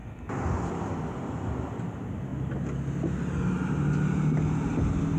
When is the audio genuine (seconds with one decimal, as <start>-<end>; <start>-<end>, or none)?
0.0-0.7; 2.3-5.2